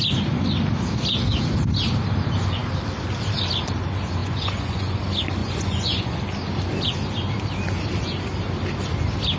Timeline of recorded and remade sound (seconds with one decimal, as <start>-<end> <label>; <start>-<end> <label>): 0.0-4.2 recorded; 4.2-5.0 remade; 5.0-5.4 recorded; 5.4-6.2 remade; 6.2-9.4 recorded